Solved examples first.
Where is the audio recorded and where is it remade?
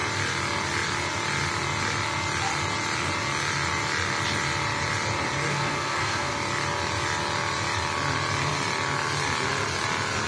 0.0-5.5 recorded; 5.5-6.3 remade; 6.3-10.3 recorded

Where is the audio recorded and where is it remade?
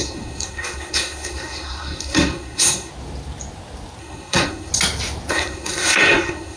0.0-2.9 remade; 2.9-4.0 recorded; 4.0-4.7 remade; 4.7-5.3 recorded; 5.3-6.6 remade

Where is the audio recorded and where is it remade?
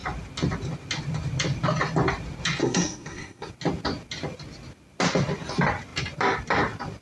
0.0-2.6 recorded; 2.6-3.5 remade; 3.5-7.0 recorded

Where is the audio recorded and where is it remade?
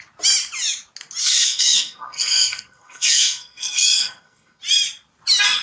0.0-1.2 recorded; 1.2-4.6 remade; 4.6-5.6 recorded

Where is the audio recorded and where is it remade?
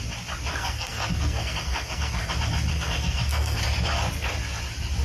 0.0-0.5 recorded; 0.5-2.3 remade; 2.3-2.7 recorded; 2.7-3.6 remade; 3.6-5.0 recorded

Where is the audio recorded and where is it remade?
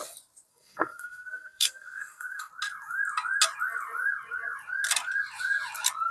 0.0-0.5 recorded; 0.5-2.5 remade; 2.5-6.1 recorded